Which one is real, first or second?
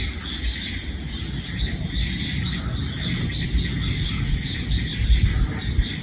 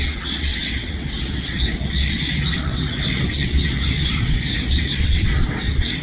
first